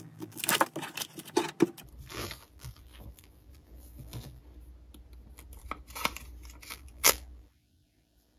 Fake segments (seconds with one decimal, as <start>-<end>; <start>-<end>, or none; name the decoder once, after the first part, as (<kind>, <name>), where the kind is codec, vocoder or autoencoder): 0.0-0.4 (vocoder, BigVGAN v2); 2.1-4.4; 6.7-8.4